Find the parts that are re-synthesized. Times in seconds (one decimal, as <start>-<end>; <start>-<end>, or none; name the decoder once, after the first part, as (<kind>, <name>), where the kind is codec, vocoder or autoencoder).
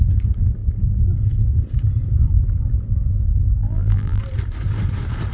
3.6-4.2 (vocoder, BigVGAN v2)